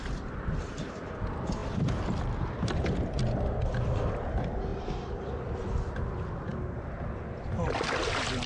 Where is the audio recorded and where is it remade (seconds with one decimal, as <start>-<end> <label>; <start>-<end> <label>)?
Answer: 0.0-6.5 recorded; 6.5-7.5 remade; 7.5-8.5 recorded